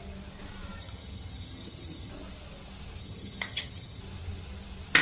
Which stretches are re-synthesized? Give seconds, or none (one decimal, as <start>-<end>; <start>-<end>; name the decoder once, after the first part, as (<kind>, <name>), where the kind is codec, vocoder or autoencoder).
0.8-2.1 (vocoder, HiFi-GAN); 3.0-4.0